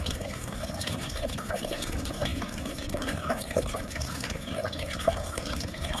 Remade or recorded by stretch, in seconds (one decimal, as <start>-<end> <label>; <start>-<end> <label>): 0.0-6.0 remade